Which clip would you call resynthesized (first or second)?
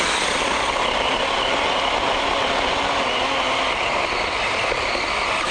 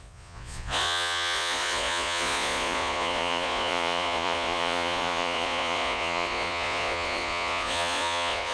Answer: second